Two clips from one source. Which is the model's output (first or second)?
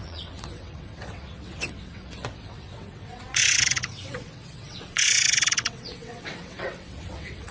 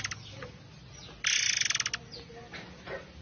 first